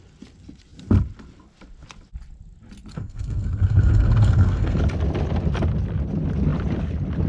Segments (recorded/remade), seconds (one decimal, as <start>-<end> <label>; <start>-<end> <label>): 0.0-2.9 recorded; 2.9-4.8 remade; 4.8-7.3 recorded